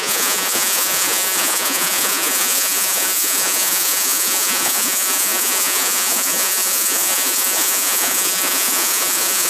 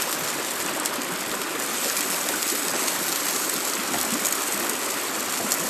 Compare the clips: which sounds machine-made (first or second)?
first